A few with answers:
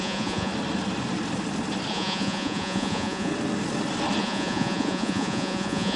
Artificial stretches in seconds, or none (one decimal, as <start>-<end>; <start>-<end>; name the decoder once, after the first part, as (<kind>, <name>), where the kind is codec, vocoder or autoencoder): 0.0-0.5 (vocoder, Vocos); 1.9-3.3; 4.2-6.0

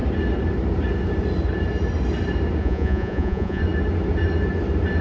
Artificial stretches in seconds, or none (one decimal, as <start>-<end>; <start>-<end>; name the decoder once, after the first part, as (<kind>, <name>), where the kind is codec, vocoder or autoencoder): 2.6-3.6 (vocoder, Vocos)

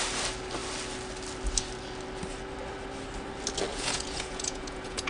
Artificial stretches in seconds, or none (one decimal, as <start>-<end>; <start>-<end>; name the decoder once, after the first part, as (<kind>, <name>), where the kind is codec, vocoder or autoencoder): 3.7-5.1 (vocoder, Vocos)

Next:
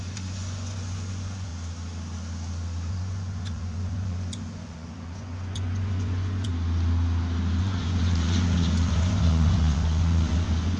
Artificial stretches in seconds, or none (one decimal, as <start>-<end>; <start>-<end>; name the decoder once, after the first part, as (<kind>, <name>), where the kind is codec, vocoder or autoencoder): 0.0-1.5 (vocoder, Vocos); 2.9-6.5; 7.6-10.8

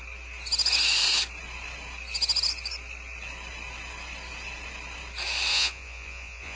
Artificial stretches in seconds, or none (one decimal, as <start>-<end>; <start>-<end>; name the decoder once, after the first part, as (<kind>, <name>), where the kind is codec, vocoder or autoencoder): 5.5-6.6 (vocoder, Vocos)

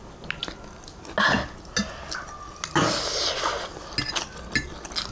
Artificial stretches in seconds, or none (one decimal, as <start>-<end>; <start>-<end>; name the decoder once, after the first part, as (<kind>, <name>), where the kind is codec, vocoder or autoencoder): none

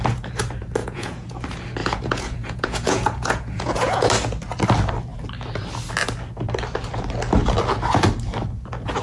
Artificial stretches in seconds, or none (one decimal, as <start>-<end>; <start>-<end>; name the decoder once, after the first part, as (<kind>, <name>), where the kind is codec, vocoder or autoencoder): 0.8-1.3 (vocoder, Vocos); 1.8-4.1

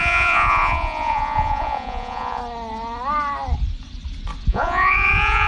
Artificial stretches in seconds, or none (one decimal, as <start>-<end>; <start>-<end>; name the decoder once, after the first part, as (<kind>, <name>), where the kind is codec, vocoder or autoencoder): 0.0-2.4 (vocoder, Vocos); 4.5-5.5